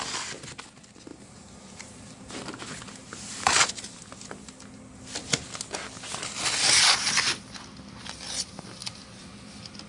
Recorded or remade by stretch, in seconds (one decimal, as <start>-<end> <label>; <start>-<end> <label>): 0.0-1.1 recorded; 1.1-2.6 remade; 2.6-3.0 recorded; 3.0-4.0 remade; 4.0-9.9 recorded